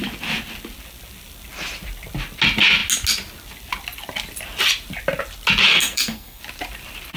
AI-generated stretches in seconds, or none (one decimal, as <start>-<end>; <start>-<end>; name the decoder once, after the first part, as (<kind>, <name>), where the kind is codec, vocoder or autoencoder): 5.7-6.4 (codec, SNAC)